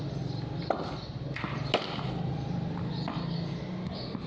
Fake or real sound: real